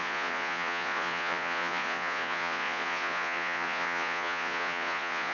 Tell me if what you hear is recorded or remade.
remade